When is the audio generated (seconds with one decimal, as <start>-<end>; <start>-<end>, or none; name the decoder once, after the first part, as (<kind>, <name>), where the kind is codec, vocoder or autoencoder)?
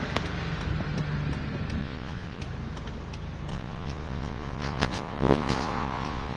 1.8-2.4 (vocoder, Vocos); 3.5-6.4